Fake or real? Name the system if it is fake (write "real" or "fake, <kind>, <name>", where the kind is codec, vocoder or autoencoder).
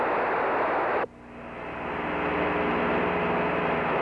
real